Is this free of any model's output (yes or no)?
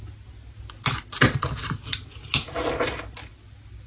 yes